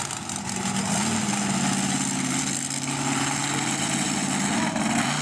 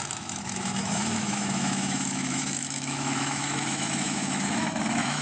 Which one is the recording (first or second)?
first